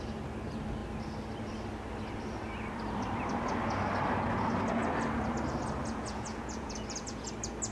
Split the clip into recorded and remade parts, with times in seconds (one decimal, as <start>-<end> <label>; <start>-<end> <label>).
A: 0.0-5.8 recorded; 5.8-7.3 remade; 7.3-7.7 recorded